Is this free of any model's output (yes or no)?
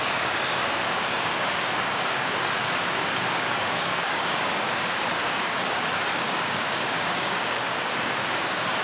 no